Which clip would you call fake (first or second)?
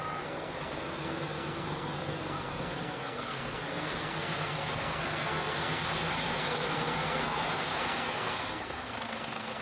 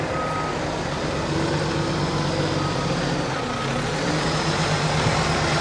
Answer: first